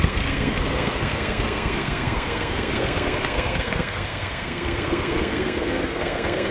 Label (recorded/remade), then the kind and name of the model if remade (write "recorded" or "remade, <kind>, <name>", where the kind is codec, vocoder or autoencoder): remade, codec, SNAC